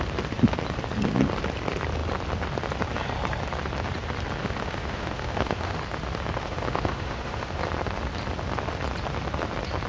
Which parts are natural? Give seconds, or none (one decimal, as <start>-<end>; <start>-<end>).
0.0-4.4; 5.8-6.4; 7.6-9.9